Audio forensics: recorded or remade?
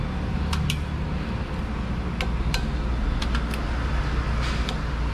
recorded